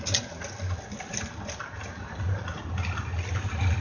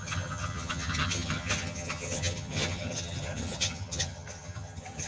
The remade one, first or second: second